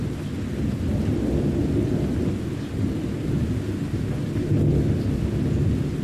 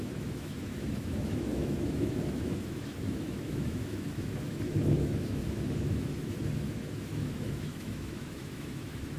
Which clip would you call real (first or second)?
first